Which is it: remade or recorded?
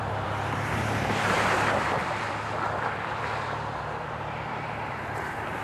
remade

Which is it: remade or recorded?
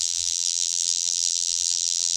remade